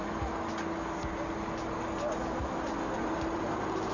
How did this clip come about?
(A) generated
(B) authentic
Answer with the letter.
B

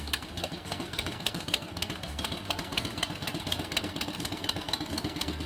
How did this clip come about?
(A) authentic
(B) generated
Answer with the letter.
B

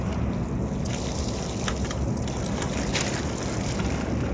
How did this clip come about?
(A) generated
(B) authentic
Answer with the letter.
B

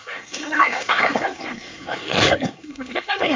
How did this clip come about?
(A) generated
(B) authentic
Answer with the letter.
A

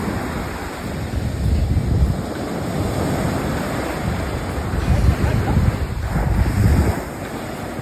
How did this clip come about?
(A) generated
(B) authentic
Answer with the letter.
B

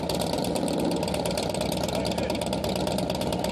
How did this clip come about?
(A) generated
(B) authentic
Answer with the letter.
B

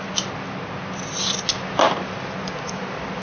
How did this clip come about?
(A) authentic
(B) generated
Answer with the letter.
A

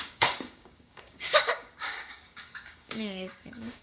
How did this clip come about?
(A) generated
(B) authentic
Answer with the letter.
A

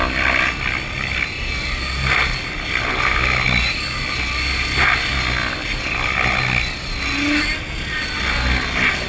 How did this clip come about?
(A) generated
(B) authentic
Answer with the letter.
B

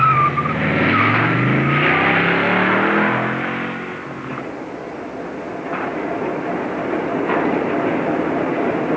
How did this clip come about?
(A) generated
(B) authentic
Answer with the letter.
B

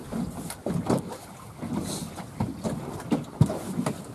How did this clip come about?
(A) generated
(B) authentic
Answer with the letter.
B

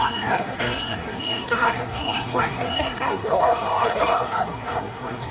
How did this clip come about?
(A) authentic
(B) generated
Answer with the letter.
B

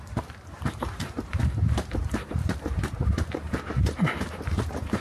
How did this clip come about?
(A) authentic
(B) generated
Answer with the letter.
B